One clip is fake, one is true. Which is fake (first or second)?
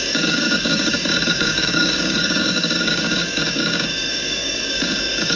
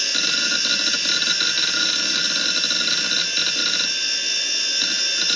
first